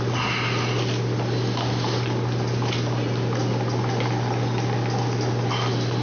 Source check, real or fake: real